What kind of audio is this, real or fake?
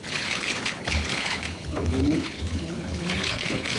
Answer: fake